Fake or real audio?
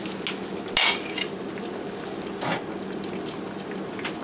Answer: real